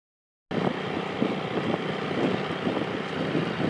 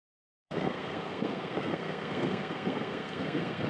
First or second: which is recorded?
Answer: first